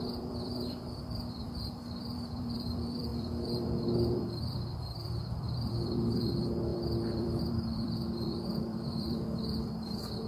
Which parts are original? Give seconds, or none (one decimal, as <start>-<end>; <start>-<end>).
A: none